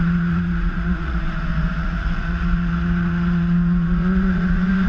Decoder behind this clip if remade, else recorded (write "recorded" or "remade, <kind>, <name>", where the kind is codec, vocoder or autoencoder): remade, vocoder, Vocos